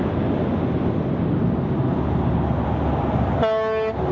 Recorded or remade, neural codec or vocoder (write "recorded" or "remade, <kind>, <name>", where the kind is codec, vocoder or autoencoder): recorded